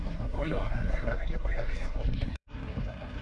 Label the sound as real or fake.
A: fake